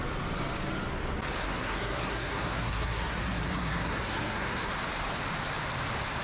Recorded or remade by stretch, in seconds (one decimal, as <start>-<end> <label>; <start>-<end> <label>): 0.0-1.4 recorded; 1.4-4.7 remade; 4.7-6.2 recorded